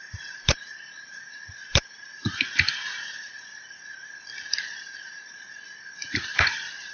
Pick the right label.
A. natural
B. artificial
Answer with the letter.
B